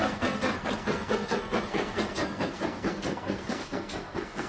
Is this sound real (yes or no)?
no